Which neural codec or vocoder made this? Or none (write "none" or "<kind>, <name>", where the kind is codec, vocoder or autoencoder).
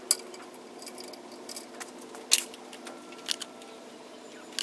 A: none